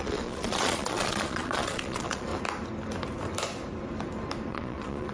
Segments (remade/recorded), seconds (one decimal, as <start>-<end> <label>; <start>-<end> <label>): 0.0-2.3 remade; 2.3-4.5 recorded; 4.5-5.1 remade